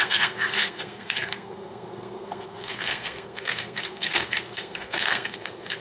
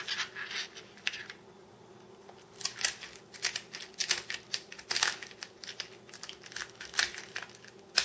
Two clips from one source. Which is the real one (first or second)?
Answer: second